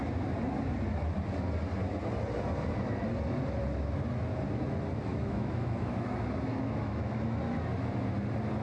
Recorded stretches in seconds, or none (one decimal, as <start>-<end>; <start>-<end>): 0.0-5.1; 7.4-8.6